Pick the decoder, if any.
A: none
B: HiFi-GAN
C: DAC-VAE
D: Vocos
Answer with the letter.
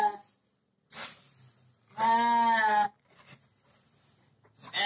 A